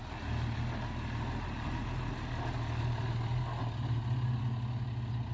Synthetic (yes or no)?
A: no